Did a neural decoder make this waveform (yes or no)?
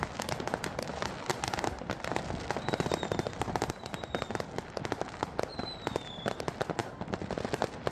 no